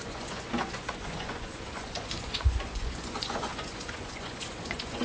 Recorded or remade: remade